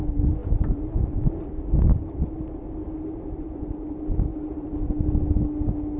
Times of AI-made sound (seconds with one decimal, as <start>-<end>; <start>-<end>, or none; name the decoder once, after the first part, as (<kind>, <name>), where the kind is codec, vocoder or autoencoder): 0.4-1.1 (vocoder, BigVGAN v2); 2.8-3.7; 4.3-4.8